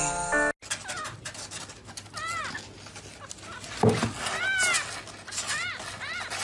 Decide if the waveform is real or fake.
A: real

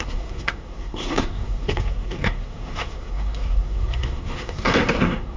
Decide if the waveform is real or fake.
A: fake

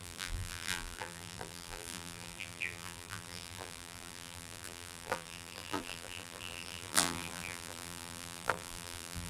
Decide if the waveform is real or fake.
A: fake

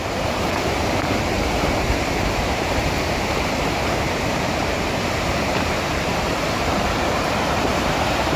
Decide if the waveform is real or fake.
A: fake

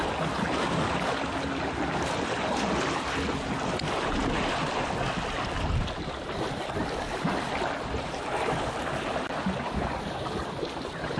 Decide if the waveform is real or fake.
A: real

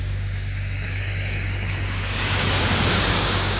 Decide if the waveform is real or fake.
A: fake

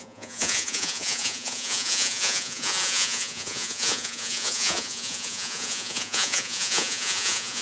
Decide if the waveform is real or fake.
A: fake